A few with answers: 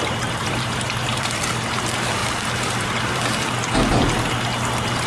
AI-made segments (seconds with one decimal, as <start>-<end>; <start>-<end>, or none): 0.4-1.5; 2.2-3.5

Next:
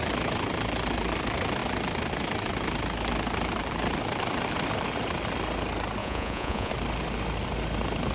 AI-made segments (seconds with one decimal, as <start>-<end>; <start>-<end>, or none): 6.0-6.7

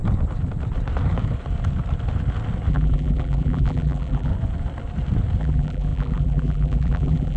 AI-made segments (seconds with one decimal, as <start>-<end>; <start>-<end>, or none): 2.7-4.3; 5.4-7.4